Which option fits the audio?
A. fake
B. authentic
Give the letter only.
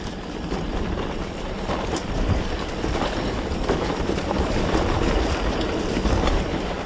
A